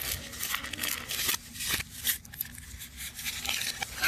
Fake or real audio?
real